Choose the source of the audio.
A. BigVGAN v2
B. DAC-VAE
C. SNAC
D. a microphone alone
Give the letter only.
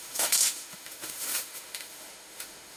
B